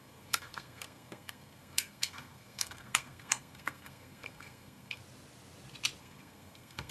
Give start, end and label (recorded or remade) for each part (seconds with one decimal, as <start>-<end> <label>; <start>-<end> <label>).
0.0-5.0 remade; 5.0-6.0 recorded; 6.0-6.9 remade